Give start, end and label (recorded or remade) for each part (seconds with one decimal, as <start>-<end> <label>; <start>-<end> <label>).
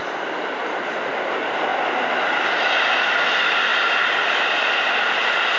0.0-5.6 recorded